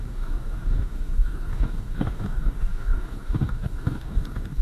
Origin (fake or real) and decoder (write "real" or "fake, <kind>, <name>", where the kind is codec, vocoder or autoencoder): fake, codec, DAC